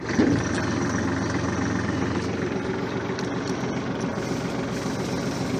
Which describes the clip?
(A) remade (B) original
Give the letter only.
B